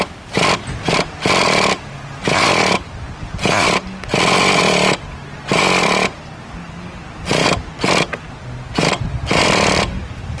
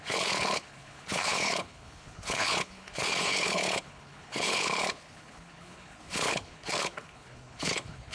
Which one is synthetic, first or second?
second